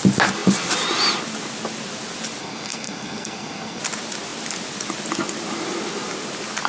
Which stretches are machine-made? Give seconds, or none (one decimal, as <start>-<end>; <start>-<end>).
2.4-3.8